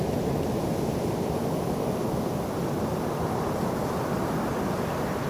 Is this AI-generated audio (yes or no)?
no